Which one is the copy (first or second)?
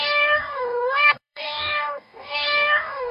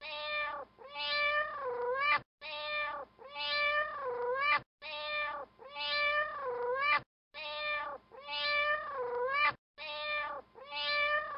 first